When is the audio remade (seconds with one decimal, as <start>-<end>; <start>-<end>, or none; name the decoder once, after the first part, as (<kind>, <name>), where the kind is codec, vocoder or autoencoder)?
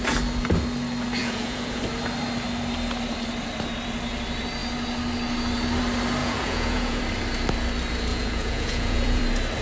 1.2-1.8 (vocoder, Vocos); 6.2-7.0; 8.1-9.2